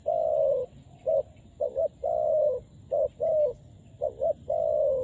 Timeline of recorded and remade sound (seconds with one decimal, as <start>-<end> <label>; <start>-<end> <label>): 0.0-5.0 recorded